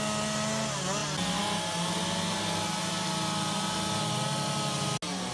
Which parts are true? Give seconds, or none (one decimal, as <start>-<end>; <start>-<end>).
0.0-5.3